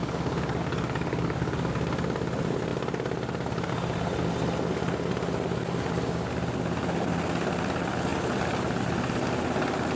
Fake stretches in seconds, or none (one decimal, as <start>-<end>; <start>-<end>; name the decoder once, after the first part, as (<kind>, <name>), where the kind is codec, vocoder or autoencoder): 0.0-1.7 (codec, DAC)